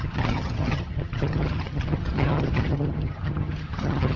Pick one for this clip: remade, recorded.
remade